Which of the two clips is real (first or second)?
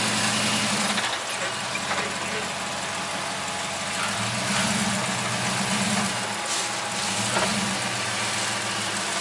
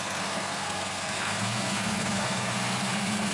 first